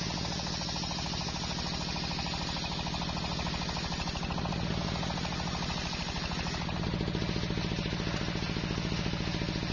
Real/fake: real